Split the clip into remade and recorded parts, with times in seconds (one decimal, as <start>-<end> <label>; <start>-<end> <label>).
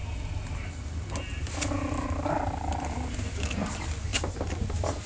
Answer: 0.0-5.1 recorded